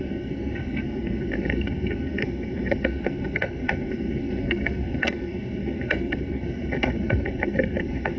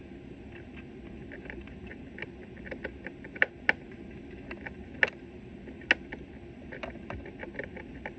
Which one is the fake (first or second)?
first